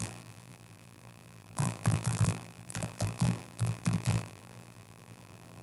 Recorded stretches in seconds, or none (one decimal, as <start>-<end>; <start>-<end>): none